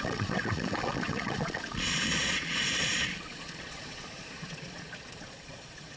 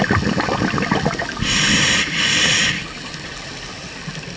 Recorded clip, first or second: second